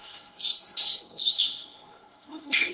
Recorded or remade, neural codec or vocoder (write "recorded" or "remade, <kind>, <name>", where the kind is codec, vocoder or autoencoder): remade, codec, SNAC